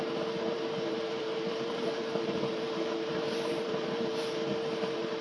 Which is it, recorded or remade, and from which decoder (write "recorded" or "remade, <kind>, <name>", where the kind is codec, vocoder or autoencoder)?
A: remade, vocoder, BigVGAN v2